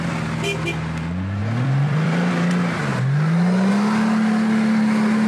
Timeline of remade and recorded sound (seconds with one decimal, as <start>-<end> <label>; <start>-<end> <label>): 0.0-1.4 recorded; 1.4-2.3 remade; 2.3-5.3 recorded

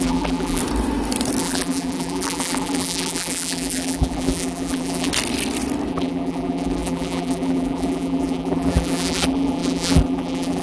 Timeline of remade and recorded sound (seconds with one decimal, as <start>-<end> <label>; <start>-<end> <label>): 0.0-0.6 remade; 0.6-1.4 recorded; 1.4-5.1 remade; 5.1-5.9 recorded; 5.9-10.6 remade

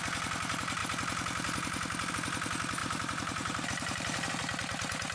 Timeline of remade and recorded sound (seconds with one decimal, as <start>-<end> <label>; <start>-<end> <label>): 0.0-2.8 recorded; 2.8-4.3 remade; 4.3-5.1 recorded

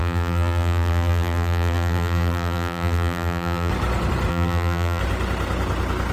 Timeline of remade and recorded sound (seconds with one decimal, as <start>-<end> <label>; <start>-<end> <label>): 0.0-3.7 remade; 3.7-4.3 recorded; 4.3-5.0 remade; 5.0-6.1 recorded

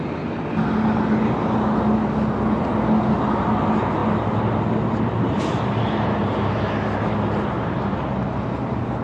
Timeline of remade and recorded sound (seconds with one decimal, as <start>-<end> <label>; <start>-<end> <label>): 0.0-9.0 recorded